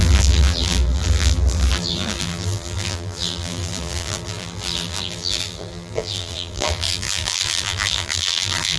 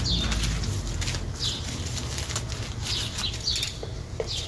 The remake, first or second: first